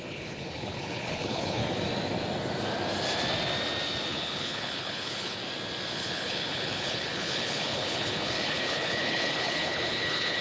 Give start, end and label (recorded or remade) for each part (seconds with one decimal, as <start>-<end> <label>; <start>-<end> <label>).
0.0-1.6 remade; 1.6-4.1 recorded; 4.1-5.4 remade; 5.4-5.9 recorded; 5.9-10.4 remade